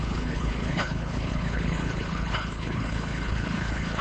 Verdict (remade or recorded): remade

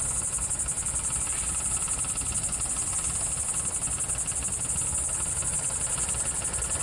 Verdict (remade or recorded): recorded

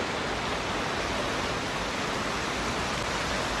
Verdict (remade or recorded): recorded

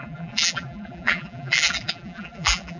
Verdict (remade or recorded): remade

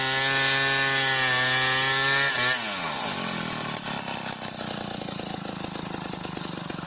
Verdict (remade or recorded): recorded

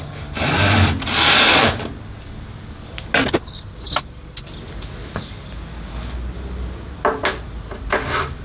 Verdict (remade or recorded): recorded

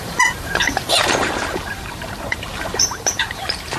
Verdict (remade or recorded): remade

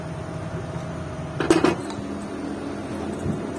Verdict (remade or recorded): recorded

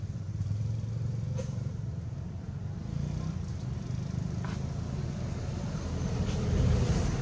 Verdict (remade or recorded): recorded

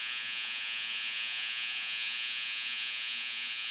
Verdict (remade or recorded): remade